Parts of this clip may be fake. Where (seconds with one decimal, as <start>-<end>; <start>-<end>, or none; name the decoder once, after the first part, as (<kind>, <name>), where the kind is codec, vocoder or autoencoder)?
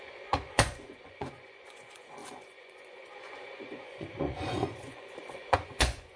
0.0-6.2 (vocoder, Vocos)